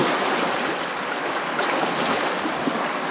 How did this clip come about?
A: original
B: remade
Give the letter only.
A